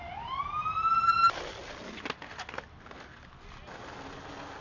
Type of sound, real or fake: real